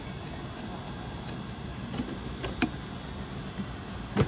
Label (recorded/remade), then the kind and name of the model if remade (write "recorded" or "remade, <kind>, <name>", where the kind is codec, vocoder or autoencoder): recorded